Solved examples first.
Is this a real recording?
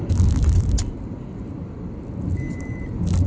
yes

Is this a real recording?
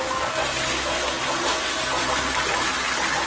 yes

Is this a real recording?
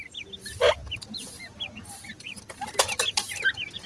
yes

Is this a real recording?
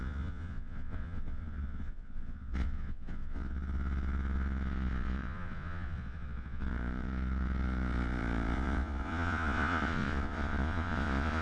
no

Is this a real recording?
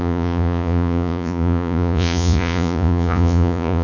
no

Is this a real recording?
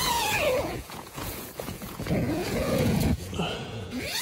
no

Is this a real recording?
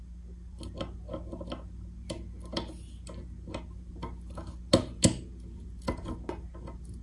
yes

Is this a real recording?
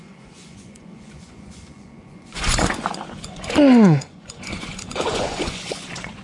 no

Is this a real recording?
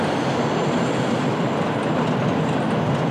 yes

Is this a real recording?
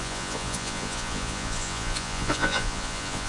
no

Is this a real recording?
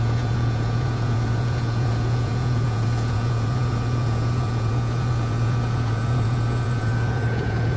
no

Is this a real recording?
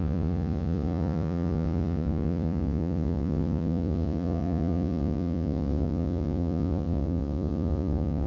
no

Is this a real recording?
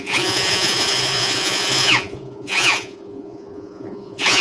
no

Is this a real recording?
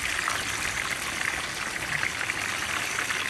yes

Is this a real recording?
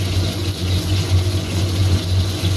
no